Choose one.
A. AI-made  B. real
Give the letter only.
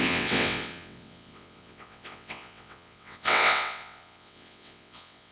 A